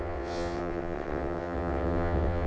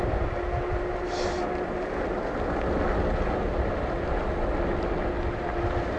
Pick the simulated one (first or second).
first